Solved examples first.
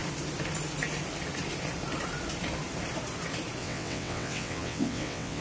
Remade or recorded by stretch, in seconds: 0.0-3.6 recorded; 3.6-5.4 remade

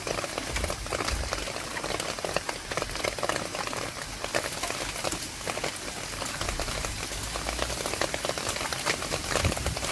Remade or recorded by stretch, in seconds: 0.0-9.9 recorded

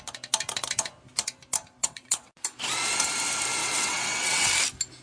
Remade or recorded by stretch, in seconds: 0.0-1.8 recorded; 1.8-2.3 remade; 2.3-3.6 recorded; 3.6-4.5 remade; 4.5-5.0 recorded